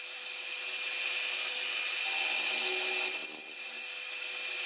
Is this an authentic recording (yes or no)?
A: yes